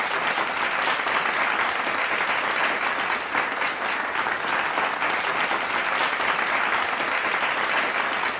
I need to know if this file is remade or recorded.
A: recorded